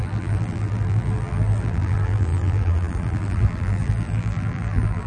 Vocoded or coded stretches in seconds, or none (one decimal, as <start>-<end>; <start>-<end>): 0.0-5.1